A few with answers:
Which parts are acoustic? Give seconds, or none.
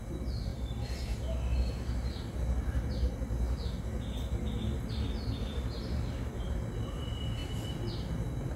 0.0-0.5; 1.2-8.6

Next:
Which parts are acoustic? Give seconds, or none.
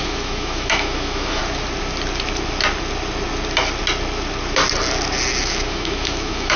1.4-5.4